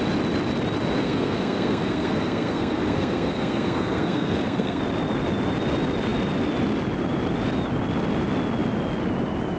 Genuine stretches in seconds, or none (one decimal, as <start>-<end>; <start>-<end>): 0.0-1.0; 4.8-9.6